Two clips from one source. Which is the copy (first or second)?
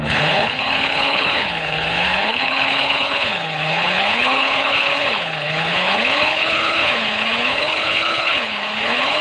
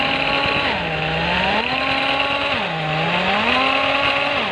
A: first